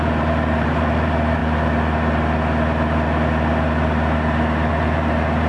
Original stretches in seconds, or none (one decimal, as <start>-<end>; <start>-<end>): 1.4-4.7